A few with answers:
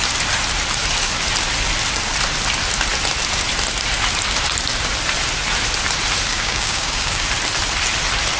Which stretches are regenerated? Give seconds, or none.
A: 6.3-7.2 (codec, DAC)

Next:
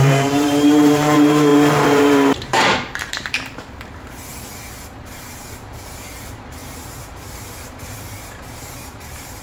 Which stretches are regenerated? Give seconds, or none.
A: 0.0-4.3 (vocoder, BigVGAN v2); 5.1-9.4

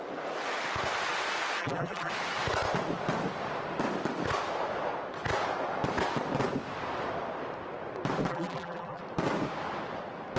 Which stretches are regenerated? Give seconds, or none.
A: 1.6-2.1 (vocoder, BigVGAN v2); 8.3-9.0